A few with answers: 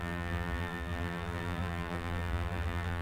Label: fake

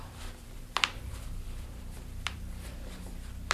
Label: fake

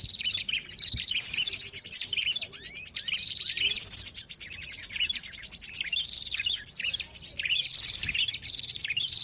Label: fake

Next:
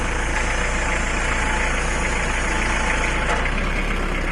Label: real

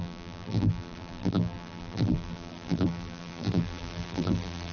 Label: fake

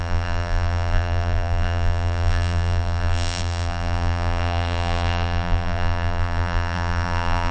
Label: fake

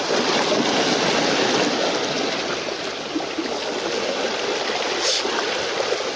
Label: real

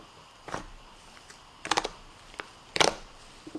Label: fake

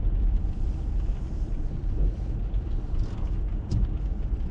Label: real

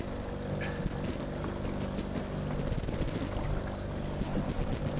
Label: real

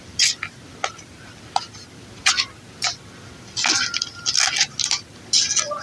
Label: real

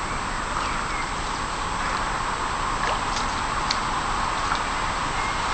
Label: real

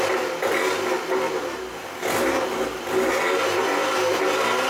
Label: real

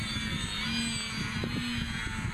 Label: real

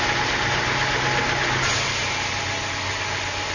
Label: real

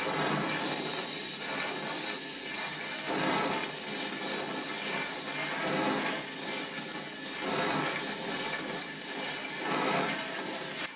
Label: real